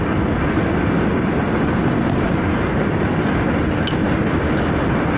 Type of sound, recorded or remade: recorded